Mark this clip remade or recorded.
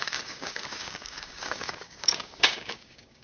remade